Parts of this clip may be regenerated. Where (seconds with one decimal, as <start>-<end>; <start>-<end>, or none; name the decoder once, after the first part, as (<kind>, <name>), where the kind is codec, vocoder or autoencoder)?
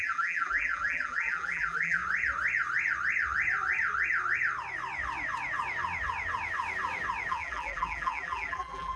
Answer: 0.0-2.0 (vocoder, BigVGAN v2); 7.3-9.0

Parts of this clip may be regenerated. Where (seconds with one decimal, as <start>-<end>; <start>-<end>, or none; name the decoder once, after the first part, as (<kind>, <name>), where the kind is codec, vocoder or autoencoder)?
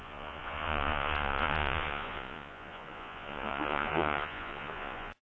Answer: 0.0-5.2 (vocoder, Vocos)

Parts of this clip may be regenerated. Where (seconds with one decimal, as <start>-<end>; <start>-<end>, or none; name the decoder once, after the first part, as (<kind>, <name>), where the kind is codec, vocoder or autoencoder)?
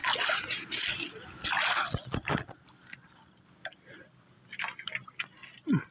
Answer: none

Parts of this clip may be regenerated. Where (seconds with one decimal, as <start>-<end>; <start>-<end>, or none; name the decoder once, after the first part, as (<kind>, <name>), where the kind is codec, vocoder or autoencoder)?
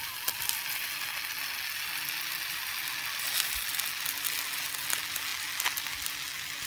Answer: none